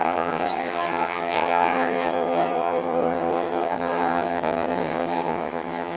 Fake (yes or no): yes